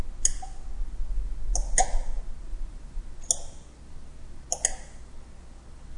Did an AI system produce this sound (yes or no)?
no